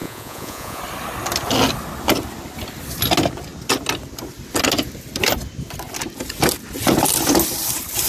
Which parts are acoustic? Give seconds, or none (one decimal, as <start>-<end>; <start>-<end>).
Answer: 0.8-8.1